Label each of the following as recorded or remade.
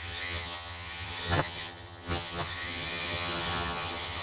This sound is remade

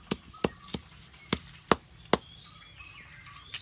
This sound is recorded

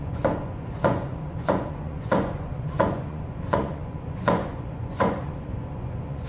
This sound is remade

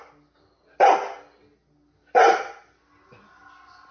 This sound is recorded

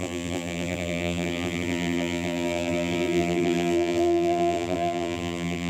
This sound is remade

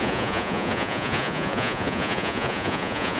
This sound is remade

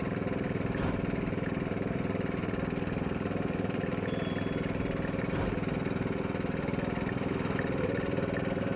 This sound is recorded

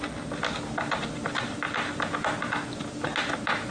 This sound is recorded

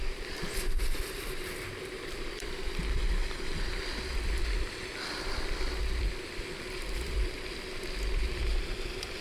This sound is remade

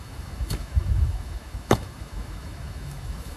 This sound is remade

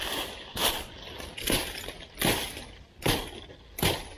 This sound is recorded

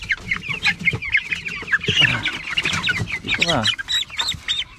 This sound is recorded